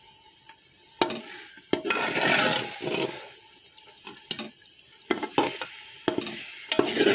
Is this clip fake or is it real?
real